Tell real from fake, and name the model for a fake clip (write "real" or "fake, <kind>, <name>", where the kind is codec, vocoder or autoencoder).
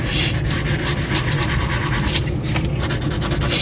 real